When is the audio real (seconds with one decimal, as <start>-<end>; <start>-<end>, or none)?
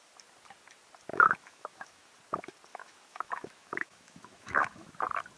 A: 0.0-1.1; 2.1-2.7; 4.9-5.4